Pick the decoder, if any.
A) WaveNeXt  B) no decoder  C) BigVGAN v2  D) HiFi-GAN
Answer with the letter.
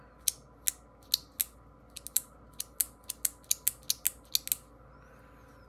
B